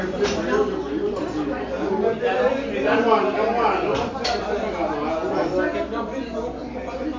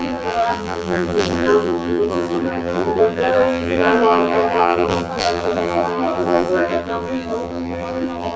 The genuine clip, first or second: first